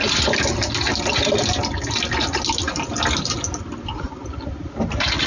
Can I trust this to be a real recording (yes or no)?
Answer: yes